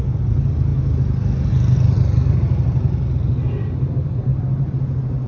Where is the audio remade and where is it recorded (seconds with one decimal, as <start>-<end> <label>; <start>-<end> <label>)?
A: 0.0-5.3 recorded